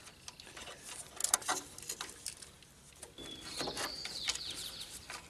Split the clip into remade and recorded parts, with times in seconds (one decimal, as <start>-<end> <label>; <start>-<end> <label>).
0.0-5.3 recorded